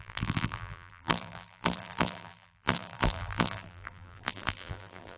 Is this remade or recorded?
remade